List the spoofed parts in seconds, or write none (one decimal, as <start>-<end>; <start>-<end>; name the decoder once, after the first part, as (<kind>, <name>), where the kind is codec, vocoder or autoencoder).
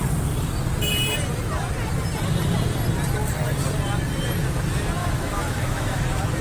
5.0-6.0 (autoencoder, DAC-VAE)